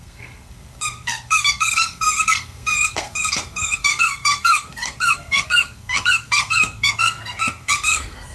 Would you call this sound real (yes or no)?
no